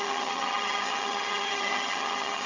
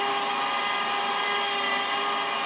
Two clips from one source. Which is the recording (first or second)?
second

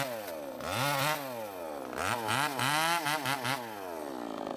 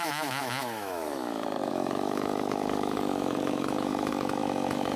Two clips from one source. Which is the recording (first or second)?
first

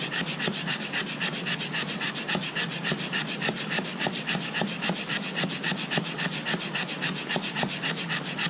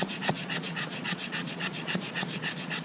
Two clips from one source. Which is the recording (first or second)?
first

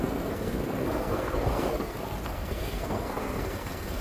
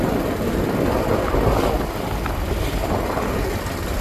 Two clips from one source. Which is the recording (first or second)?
second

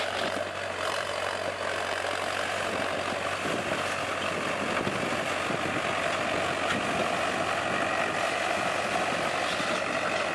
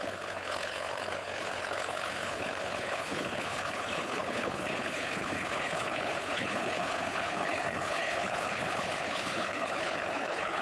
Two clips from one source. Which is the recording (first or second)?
first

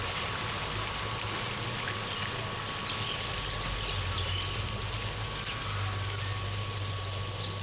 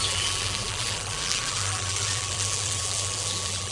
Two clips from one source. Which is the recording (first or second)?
first